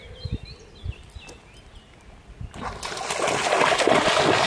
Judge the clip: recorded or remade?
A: recorded